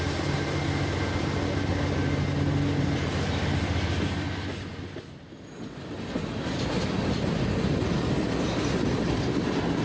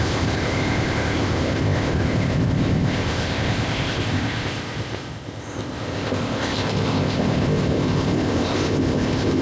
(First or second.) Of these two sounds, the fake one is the second